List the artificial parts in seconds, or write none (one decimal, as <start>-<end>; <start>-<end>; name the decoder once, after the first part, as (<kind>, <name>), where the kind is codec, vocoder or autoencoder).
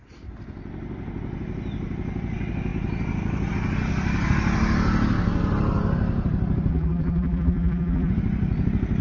6.7-8.1 (vocoder, BigVGAN v2)